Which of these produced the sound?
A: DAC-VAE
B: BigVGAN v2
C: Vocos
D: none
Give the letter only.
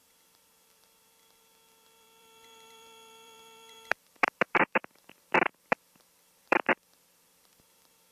B